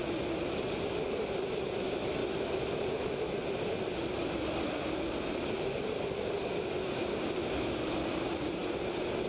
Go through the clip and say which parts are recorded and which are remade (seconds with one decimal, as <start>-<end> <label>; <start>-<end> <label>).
0.0-9.3 recorded